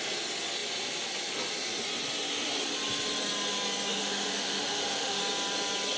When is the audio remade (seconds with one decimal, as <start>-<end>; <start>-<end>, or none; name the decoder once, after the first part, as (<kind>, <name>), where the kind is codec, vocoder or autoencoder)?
3.9-5.2 (autoencoder, DAC-VAE)